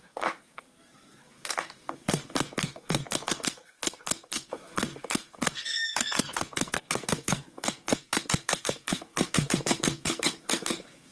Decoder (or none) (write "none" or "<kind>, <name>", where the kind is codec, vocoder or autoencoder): codec, SNAC